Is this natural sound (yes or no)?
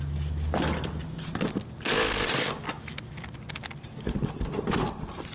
yes